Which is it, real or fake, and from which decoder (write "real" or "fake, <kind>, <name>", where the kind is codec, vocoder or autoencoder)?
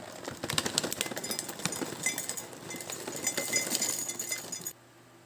real